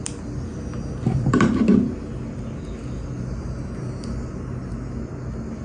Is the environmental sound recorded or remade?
recorded